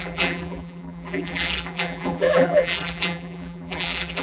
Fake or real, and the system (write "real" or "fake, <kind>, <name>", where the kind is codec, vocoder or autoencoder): fake, vocoder, BigVGAN v2